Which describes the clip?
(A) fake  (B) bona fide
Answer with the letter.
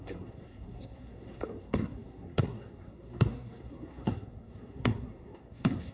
A